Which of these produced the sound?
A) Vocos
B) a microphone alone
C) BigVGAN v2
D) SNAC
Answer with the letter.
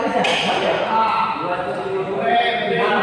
C